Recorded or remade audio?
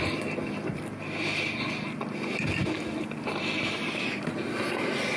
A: recorded